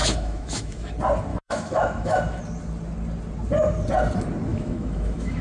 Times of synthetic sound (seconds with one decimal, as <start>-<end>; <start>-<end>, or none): 0.0-0.9; 1.3-2.4; 4.5-5.4